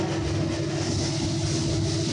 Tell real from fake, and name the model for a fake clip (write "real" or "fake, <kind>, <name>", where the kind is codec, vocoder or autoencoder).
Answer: real